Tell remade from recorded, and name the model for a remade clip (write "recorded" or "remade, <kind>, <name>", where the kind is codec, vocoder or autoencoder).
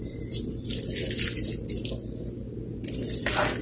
recorded